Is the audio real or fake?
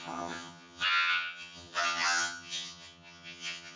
fake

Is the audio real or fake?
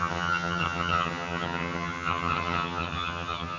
fake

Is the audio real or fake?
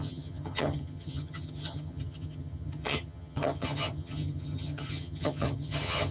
fake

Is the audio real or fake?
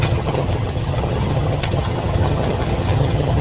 fake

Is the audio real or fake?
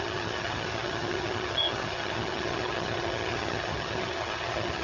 fake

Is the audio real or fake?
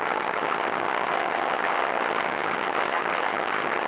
fake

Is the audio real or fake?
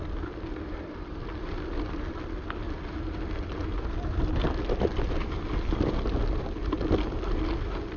real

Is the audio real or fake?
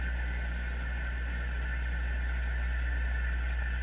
real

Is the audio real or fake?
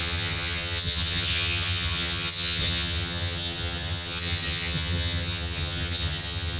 fake